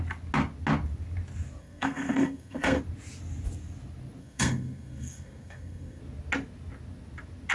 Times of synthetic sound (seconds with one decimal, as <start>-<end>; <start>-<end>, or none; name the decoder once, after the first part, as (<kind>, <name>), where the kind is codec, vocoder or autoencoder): 1.6-2.8 (codec, SNAC); 4.2-6.0